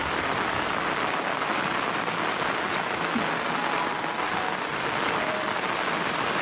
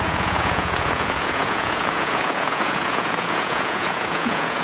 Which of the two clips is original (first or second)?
first